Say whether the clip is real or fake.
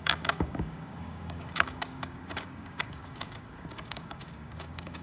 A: fake